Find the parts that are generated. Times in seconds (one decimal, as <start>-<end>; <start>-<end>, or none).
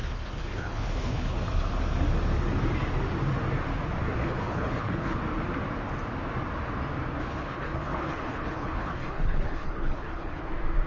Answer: 0.0-1.4; 4.2-5.2; 7.2-10.4